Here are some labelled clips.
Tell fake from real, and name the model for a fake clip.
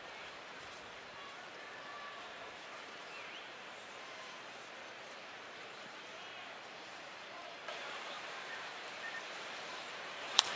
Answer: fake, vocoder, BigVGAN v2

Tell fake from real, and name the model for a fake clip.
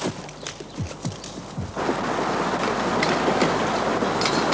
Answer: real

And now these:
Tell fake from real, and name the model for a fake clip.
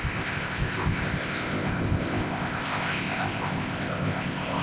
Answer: fake, codec, ZipCodec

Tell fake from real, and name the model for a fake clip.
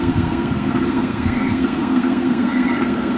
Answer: fake, codec, SNAC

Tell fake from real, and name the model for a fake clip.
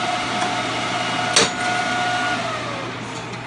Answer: real